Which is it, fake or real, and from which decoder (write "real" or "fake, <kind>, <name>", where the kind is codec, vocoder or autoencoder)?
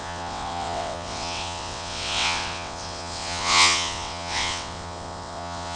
fake, vocoder, WaveNeXt